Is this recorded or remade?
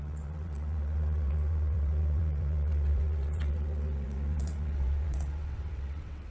remade